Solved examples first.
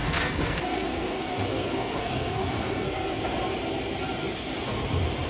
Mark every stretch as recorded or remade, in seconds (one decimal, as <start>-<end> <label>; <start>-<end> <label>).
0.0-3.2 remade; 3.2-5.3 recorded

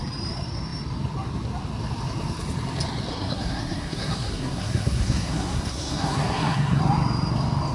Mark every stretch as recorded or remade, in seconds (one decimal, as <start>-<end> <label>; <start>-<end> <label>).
0.0-3.1 recorded; 3.1-6.8 remade; 6.8-7.7 recorded

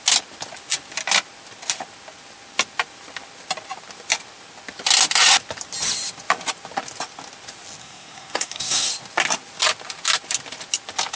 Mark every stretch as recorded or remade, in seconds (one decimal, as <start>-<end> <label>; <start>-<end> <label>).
0.0-7.8 recorded; 7.8-8.9 remade; 8.9-11.2 recorded

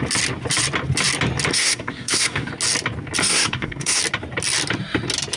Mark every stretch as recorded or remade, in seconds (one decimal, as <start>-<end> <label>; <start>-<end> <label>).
0.0-1.5 recorded; 1.5-2.5 remade; 2.5-3.2 recorded; 3.2-4.0 remade; 4.0-5.4 recorded

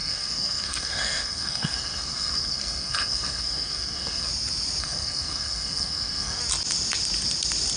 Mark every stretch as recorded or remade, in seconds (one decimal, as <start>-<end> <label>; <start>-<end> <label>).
0.0-4.3 remade; 4.3-4.8 recorded; 4.8-6.4 remade; 6.4-7.8 recorded

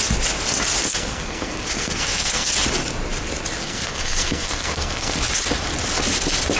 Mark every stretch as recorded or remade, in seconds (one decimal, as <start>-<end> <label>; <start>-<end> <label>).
0.0-0.8 recorded; 0.8-2.5 remade; 2.5-3.6 recorded; 3.6-5.2 remade; 5.2-6.6 recorded

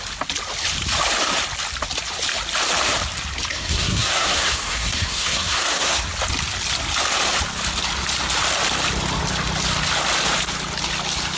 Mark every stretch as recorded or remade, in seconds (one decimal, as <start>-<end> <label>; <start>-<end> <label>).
0.0-3.5 recorded; 3.5-6.1 remade; 6.1-11.4 recorded